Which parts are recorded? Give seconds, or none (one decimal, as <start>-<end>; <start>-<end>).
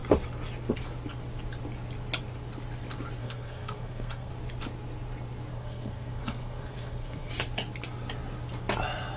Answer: 0.0-3.2; 4.3-5.5; 7.3-9.2